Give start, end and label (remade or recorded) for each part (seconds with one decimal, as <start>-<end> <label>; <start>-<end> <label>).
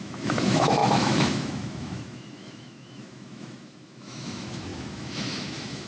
0.0-5.9 remade